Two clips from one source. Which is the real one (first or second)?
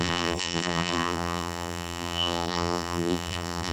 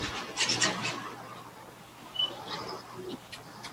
second